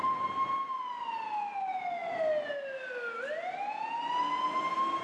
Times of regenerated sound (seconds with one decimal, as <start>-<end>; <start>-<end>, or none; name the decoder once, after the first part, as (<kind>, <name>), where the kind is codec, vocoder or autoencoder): none